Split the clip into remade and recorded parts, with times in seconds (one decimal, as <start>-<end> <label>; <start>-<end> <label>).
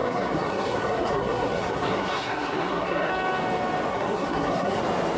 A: 0.0-3.1 remade; 3.1-3.9 recorded; 3.9-4.8 remade; 4.8-5.2 recorded